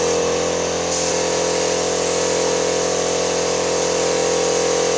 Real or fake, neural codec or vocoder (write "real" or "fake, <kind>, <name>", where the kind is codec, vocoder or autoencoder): real